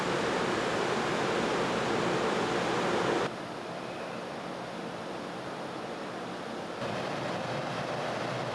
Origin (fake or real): fake